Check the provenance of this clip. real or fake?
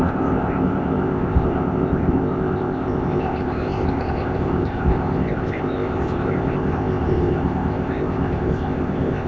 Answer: fake